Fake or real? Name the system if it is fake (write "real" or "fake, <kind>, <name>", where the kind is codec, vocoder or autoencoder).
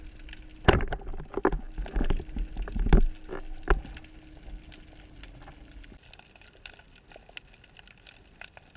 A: real